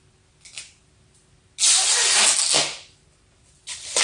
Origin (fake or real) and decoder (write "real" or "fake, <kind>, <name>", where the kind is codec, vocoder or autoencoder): real